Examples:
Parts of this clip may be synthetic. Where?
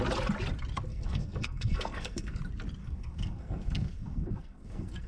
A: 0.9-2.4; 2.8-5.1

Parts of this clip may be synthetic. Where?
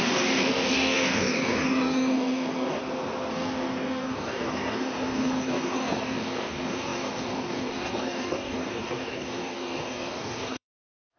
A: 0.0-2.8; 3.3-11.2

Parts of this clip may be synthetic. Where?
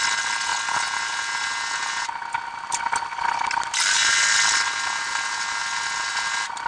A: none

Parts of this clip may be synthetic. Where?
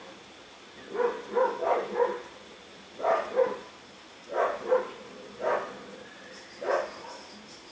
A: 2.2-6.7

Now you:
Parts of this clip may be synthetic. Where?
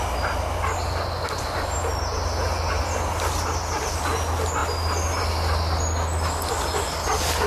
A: none